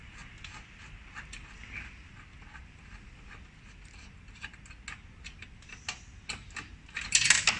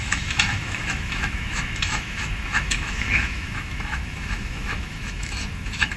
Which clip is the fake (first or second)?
second